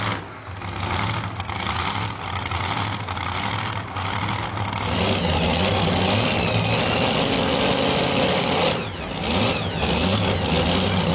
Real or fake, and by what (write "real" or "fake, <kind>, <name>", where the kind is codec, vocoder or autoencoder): real